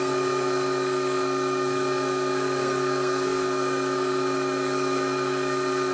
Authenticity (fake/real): fake